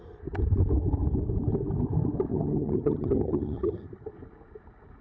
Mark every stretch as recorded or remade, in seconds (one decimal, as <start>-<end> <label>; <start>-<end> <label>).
0.0-2.3 recorded; 2.3-4.1 remade; 4.1-5.0 recorded